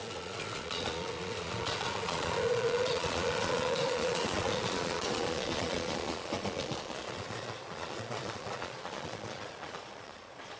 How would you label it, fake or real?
fake